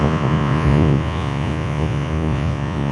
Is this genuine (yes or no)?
no